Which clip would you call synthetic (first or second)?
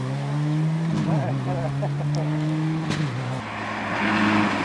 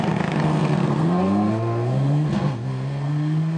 second